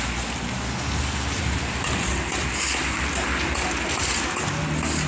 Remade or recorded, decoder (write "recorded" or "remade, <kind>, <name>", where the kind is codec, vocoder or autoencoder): recorded